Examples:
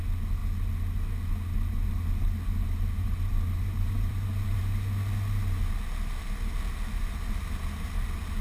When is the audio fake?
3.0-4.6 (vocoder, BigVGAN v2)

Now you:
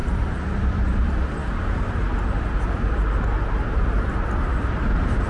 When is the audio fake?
0.0-1.4 (vocoder, BigVGAN v2); 4.6-5.3

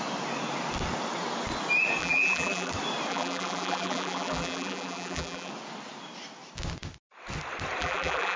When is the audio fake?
2.0-2.7 (vocoder, BigVGAN v2); 3.1-5.5; 7.8-8.4

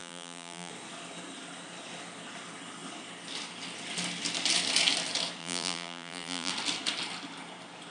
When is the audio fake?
0.0-0.7 (vocoder, BigVGAN v2); 5.4-6.5

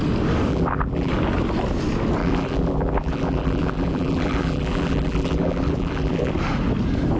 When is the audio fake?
0.5-1.1 (vocoder, BigVGAN v2); 2.2-6.3

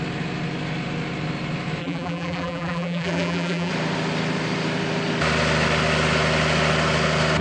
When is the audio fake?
1.8-3.7 (vocoder, BigVGAN v2)

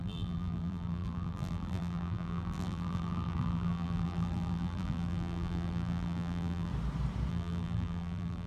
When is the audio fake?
0.0-6.7 (vocoder, BigVGAN v2); 7.3-8.5